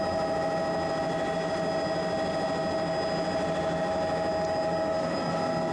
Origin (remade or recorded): recorded